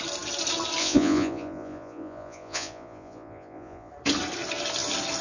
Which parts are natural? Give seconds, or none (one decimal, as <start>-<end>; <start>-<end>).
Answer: 0.0-0.8; 3.9-5.2